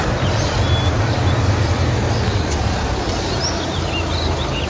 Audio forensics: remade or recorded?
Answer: recorded